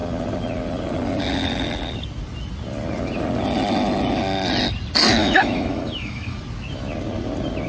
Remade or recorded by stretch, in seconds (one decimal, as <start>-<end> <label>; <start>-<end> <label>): 0.0-5.2 recorded; 5.2-6.4 remade; 6.4-7.7 recorded